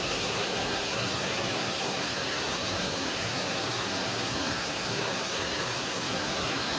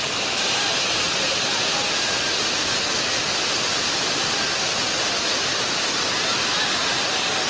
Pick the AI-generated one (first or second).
first